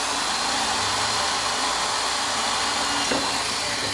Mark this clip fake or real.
real